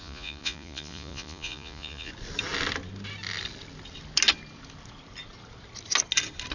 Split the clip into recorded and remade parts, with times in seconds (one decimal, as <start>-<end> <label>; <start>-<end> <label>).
0.0-2.1 remade; 2.1-6.5 recorded